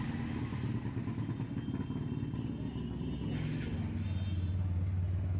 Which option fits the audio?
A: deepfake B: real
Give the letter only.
B